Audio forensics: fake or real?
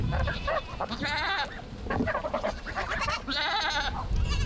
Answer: real